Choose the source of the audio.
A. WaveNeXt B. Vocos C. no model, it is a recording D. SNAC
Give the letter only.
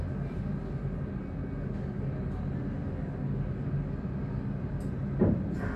C